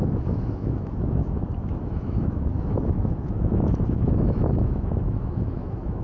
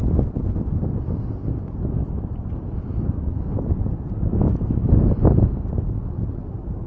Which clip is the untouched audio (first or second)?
second